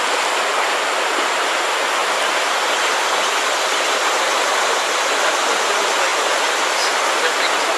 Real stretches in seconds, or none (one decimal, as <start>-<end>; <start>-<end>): 0.0-7.8